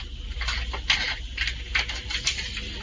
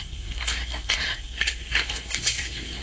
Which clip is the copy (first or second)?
second